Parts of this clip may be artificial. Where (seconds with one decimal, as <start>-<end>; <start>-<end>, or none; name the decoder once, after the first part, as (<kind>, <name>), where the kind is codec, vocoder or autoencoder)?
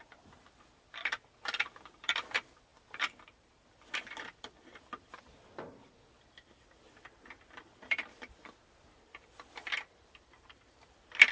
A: 0.0-11.3 (vocoder, BigVGAN v2)